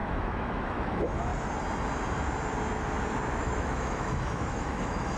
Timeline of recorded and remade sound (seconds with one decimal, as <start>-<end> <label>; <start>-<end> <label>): 0.0-1.3 remade; 1.3-3.4 recorded; 3.4-5.2 remade